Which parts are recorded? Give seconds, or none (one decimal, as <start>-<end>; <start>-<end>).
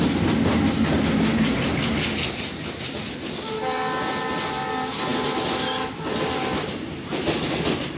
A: 0.0-8.0